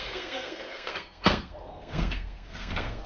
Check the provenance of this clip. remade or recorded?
remade